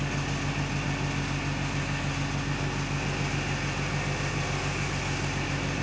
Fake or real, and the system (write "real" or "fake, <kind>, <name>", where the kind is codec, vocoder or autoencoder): real